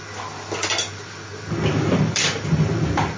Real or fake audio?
real